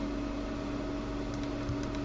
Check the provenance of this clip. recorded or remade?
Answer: recorded